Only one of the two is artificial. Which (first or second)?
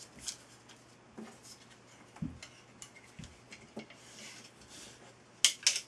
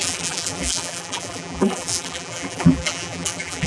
second